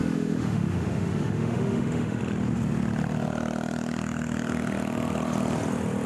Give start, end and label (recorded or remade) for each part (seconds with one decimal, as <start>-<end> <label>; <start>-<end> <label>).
0.0-2.2 remade; 2.2-6.1 recorded